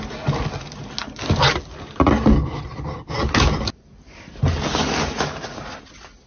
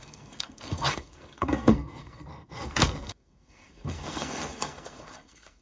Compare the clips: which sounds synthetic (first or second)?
second